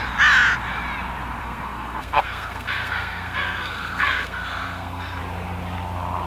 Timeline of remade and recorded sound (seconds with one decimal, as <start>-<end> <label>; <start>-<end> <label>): 0.0-1.4 recorded; 1.4-5.2 remade; 5.2-6.3 recorded